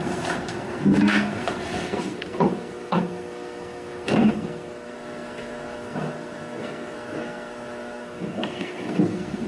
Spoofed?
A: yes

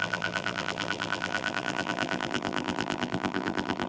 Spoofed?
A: yes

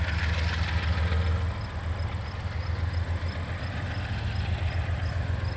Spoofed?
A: no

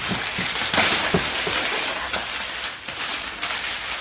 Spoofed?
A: no